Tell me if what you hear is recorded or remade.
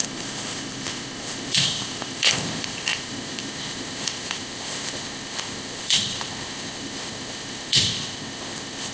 remade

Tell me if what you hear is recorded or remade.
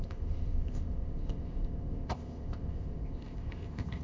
remade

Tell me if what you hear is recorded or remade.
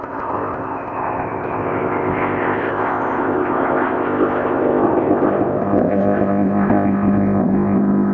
remade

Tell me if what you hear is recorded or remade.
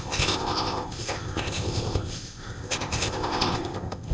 remade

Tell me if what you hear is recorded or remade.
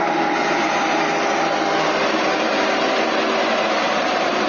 recorded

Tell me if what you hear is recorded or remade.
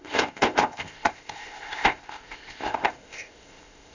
remade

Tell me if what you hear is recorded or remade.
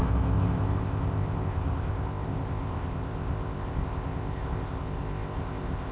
remade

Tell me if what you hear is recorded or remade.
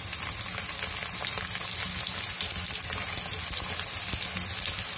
recorded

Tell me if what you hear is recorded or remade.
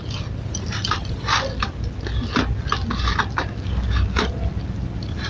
recorded